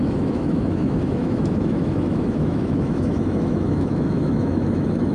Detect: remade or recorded remade